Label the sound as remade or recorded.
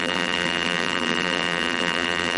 remade